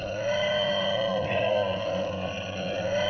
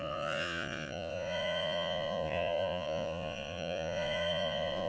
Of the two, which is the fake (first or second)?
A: second